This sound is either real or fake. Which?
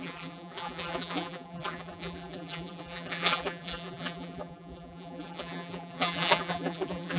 fake